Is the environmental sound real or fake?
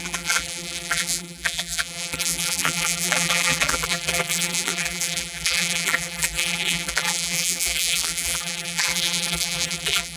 fake